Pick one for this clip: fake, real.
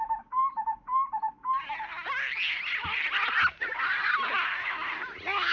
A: real